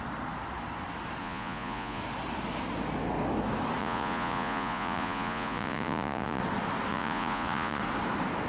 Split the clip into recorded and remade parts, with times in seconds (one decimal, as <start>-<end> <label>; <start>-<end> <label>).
0.0-1.2 recorded; 1.2-2.0 remade; 2.0-3.8 recorded; 3.8-6.4 remade; 6.4-6.9 recorded; 6.9-7.8 remade; 7.8-8.5 recorded